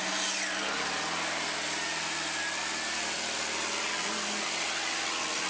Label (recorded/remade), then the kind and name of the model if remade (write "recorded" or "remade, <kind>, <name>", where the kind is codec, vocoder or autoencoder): recorded